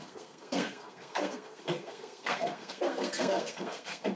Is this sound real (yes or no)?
no